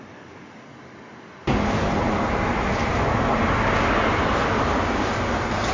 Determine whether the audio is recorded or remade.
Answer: recorded